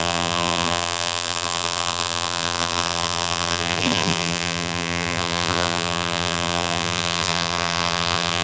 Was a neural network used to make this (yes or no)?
yes